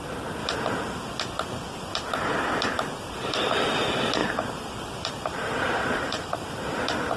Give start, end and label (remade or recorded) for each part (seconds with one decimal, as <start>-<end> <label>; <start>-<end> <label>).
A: 0.0-3.1 recorded; 3.1-3.7 remade; 3.7-4.2 recorded; 4.2-6.8 remade; 6.8-7.2 recorded